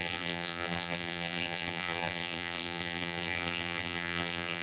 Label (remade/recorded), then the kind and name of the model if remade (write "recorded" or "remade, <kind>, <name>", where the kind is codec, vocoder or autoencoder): remade, vocoder, BigVGAN v2